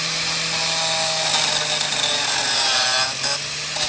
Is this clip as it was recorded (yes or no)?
yes